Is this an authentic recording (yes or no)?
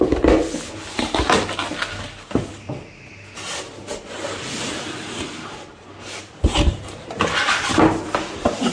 yes